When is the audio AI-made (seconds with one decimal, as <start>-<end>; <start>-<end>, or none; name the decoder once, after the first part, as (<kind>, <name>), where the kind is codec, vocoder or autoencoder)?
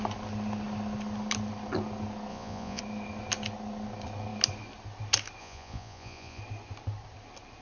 2.3-2.8 (vocoder, Vocos); 5.4-6.4